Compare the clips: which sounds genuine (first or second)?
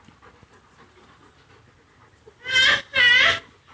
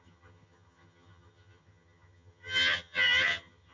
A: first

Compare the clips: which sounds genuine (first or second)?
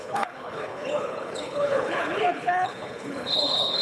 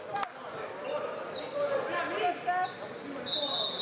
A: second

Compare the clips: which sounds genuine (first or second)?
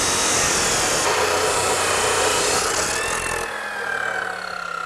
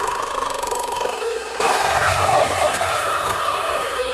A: first